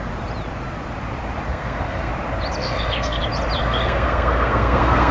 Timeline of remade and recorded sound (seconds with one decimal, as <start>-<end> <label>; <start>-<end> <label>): 0.0-1.5 recorded; 1.5-2.1 remade; 2.1-2.6 recorded; 2.6-3.2 remade; 3.2-3.6 recorded; 3.6-5.1 remade